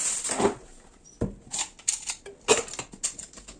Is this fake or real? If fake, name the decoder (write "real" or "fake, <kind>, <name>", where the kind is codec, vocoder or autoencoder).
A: real